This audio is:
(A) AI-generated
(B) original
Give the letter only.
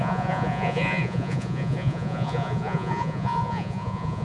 A